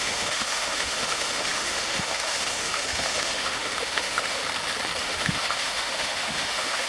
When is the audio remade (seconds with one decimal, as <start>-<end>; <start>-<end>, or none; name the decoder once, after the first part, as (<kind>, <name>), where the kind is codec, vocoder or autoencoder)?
0.0-4.4 (autoencoder, DAC-VAE); 5.0-6.9